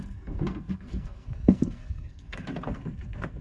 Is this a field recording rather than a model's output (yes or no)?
no